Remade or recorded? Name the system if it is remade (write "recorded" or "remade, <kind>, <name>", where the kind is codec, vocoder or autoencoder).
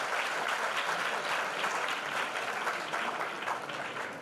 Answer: recorded